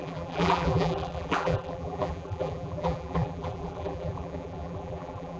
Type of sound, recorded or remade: remade